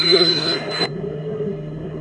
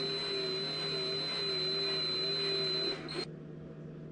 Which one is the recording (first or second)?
second